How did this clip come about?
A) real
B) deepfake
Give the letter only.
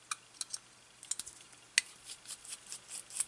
A